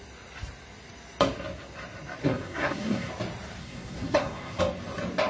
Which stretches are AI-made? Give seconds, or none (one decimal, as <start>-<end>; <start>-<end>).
2.2-3.1; 3.6-4.6